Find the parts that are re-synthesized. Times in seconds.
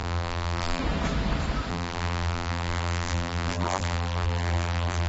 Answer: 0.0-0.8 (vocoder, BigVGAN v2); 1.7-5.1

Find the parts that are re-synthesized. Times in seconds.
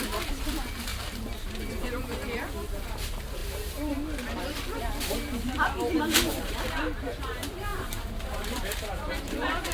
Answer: 0.0-9.7 (vocoder, BigVGAN v2)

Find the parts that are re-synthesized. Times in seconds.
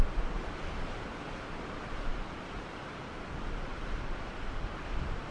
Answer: 0.0-2.1 (vocoder, BigVGAN v2); 4.8-5.3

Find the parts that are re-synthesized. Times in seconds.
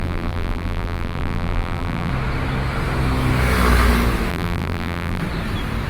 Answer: 0.0-2.1 (vocoder, BigVGAN v2); 4.3-5.2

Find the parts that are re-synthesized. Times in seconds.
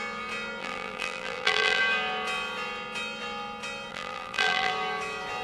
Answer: 0.6-1.8 (vocoder, BigVGAN v2); 3.9-4.7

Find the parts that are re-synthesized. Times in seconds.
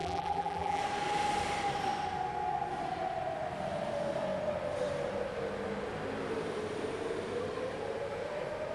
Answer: 0.0-0.8 (vocoder, BigVGAN v2)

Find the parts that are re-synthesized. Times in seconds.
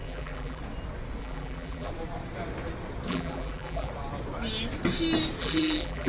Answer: 0.0-0.6 (vocoder, BigVGAN v2); 1.2-1.9; 3.1-3.9; 5.4-6.1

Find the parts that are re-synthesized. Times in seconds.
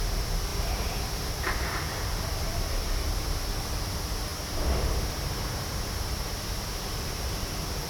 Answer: 0.0-0.5 (vocoder, BigVGAN v2); 1.3-4.3; 6.9-7.9